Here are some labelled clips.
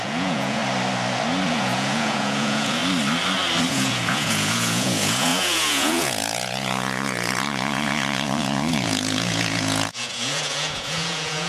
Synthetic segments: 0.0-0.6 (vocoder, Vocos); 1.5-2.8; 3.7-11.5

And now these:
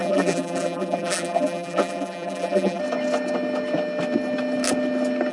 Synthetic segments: 0.0-2.8 (vocoder, BigVGAN v2)